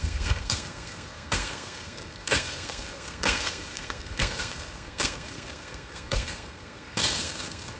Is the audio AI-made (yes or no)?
yes